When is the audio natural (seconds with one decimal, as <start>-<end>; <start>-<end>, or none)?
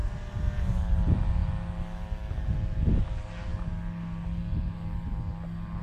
0.0-5.8